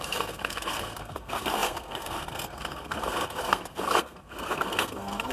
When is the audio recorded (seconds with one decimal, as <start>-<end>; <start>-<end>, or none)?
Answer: none